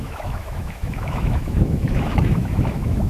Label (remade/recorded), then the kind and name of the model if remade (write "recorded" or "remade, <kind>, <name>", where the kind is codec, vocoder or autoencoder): remade, autoencoder, DAC-VAE